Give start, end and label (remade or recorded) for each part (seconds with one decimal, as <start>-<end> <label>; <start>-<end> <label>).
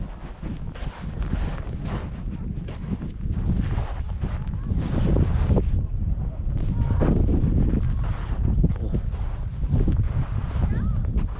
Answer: 0.0-8.2 recorded; 8.2-8.7 remade; 8.7-11.4 recorded